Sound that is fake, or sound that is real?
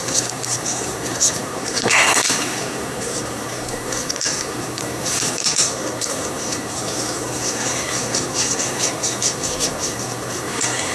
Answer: fake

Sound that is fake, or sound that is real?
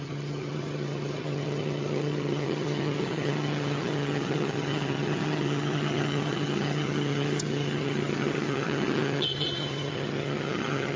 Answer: fake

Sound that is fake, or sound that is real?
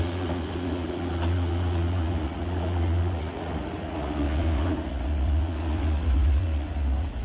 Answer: fake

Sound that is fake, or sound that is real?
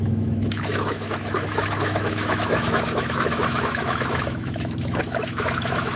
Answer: fake